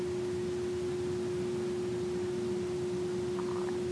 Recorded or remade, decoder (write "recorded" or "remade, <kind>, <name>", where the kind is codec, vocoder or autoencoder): recorded